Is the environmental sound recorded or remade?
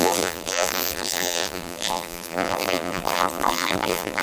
remade